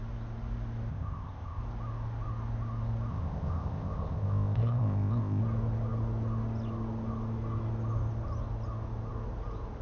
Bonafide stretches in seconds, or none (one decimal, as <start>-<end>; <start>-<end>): 0.0-0.9; 1.6-3.1; 5.4-9.8